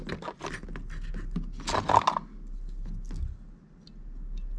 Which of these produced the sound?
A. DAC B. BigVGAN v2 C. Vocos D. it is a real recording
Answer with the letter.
D